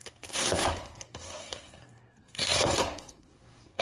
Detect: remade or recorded remade